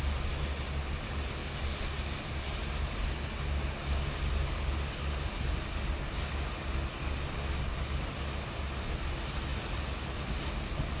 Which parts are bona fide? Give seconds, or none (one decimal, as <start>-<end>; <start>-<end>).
0.0-11.0